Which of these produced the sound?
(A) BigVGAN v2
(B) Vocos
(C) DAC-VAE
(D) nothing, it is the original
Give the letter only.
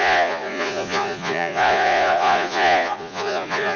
B